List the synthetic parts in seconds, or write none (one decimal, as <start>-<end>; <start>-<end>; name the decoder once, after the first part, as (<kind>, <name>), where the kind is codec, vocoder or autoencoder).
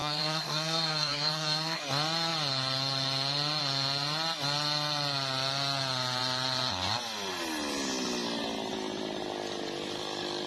0.0-1.8 (codec, SNAC)